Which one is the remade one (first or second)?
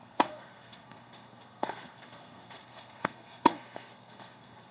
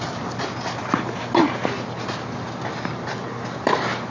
first